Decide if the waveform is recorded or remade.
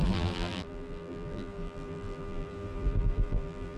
remade